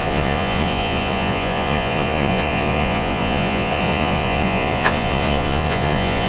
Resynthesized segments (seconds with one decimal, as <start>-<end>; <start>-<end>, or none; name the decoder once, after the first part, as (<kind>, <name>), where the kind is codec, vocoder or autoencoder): 0.0-6.3 (vocoder, Vocos)